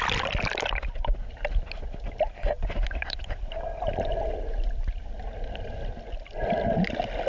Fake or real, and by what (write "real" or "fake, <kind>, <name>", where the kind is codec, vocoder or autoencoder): real